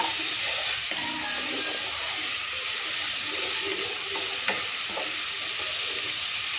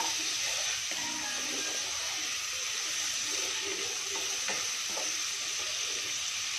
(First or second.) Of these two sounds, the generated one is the first